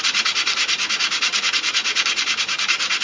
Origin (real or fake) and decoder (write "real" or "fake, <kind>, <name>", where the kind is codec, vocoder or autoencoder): fake, vocoder, BigVGAN v2